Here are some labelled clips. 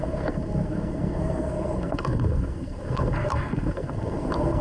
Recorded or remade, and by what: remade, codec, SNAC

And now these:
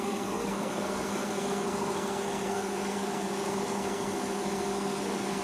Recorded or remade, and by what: remade, codec, SNAC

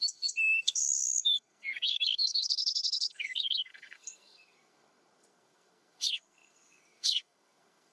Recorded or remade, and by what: remade, codec, SNAC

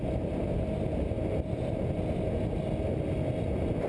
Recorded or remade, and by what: recorded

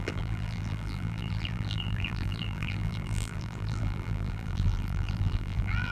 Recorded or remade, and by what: remade, vocoder, BigVGAN v2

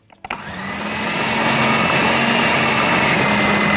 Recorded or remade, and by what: recorded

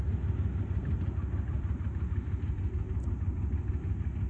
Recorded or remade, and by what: recorded